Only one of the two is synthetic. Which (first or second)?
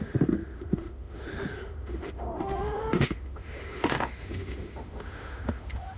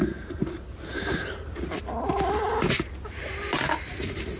first